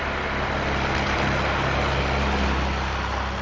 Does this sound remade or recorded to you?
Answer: recorded